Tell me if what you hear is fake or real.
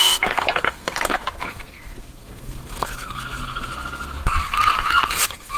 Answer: fake